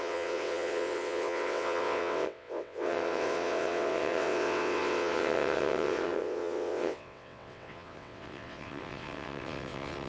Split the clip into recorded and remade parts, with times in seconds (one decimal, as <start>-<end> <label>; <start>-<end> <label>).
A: 0.0-10.1 remade